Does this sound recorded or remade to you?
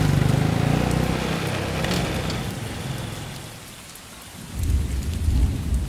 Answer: recorded